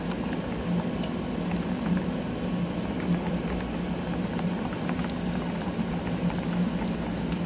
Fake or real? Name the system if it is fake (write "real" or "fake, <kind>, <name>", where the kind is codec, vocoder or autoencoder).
real